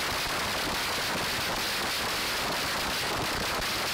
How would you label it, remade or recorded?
recorded